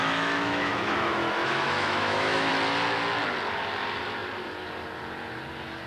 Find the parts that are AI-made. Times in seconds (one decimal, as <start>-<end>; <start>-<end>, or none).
0.0-2.5